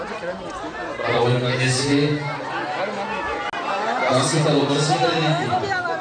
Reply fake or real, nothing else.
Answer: real